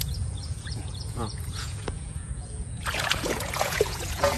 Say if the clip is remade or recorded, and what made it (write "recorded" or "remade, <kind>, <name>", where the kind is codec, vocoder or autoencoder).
remade, vocoder, Vocos